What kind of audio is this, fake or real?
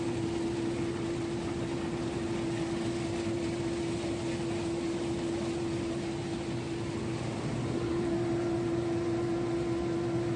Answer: real